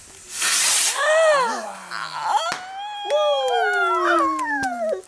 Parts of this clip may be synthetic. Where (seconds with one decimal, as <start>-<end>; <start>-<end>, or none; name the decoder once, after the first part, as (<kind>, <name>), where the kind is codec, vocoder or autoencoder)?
none